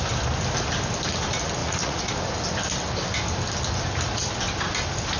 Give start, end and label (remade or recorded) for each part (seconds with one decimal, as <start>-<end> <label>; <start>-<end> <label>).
0.0-1.6 recorded; 1.6-2.1 remade; 2.1-5.2 recorded